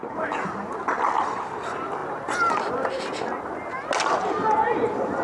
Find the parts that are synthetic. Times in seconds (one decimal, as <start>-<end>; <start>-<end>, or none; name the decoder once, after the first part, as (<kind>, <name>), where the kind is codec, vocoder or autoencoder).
none